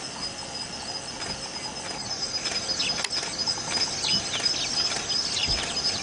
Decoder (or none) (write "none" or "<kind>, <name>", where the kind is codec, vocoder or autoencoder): none